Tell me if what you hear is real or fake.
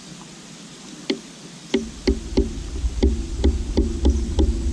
real